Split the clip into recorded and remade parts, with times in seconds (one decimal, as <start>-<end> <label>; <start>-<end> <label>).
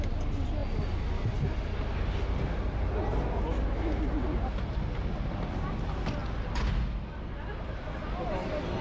0.0-8.8 recorded